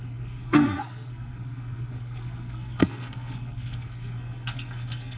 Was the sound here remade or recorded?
remade